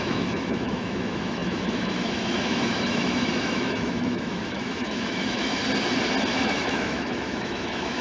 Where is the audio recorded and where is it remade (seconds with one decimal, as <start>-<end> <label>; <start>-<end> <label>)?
0.0-5.6 remade; 5.6-6.3 recorded; 6.3-8.0 remade